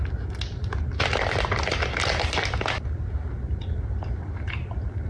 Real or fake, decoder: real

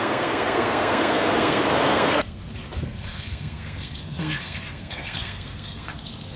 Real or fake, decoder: fake, codec, SNAC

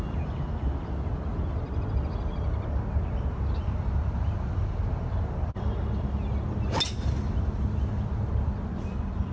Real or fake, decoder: real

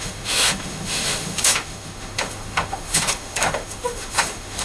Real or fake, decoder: fake, autoencoder, DAC-VAE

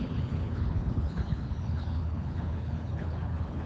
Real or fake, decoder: fake, codec, HILCodec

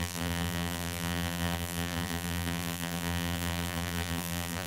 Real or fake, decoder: fake, vocoder, BigVGAN v2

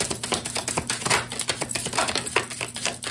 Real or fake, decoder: real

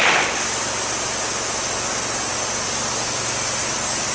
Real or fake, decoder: real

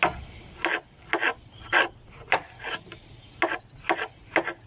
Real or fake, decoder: real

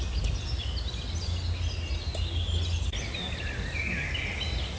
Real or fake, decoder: real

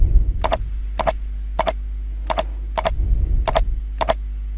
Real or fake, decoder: real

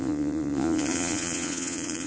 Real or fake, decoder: fake, vocoder, Vocos